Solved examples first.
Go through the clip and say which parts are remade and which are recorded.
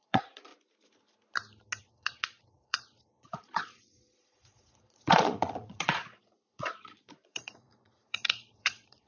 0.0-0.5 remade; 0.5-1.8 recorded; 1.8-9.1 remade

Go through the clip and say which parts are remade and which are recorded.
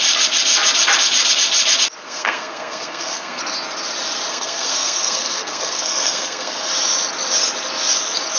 0.0-2.0 recorded; 2.0-3.4 remade; 3.4-4.3 recorded; 4.3-6.7 remade; 6.7-8.4 recorded